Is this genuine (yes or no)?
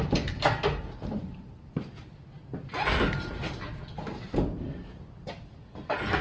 yes